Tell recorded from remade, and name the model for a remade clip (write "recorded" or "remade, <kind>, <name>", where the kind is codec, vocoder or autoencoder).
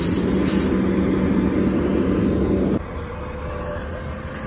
recorded